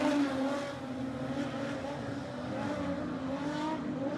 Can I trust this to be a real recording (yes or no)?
yes